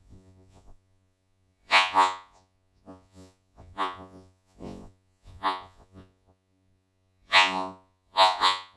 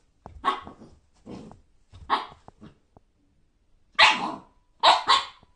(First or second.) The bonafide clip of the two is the second